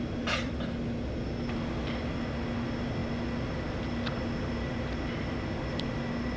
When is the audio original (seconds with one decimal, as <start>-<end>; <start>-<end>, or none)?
0.0-6.4